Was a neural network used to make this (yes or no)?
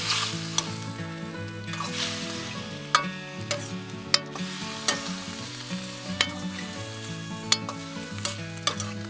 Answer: no